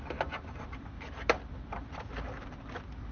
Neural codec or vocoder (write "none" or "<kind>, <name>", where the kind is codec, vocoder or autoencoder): none